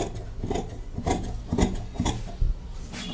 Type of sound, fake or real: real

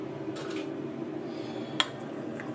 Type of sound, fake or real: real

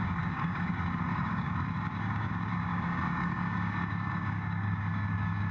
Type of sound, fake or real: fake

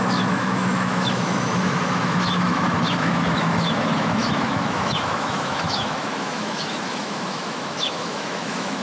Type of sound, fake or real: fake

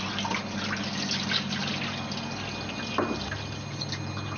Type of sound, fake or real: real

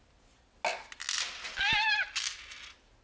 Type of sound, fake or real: real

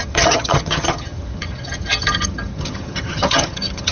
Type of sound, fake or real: fake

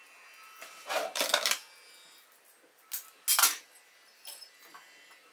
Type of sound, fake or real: real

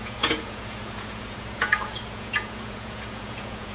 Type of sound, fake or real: fake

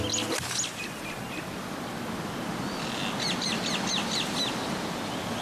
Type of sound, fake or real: real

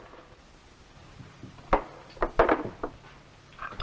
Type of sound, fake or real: real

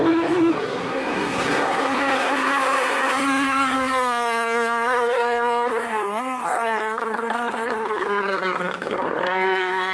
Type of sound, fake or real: fake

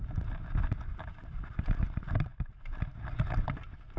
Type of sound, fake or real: real